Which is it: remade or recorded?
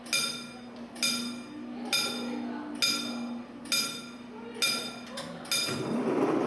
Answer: recorded